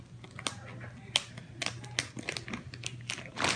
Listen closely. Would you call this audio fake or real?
real